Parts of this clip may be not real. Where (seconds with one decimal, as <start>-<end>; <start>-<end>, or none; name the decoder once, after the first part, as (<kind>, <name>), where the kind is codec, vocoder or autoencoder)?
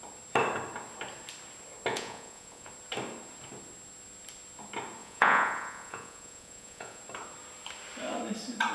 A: 1.9-2.7 (vocoder, Vocos); 5.0-7.0